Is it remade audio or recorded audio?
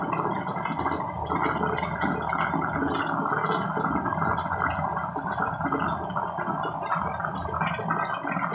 recorded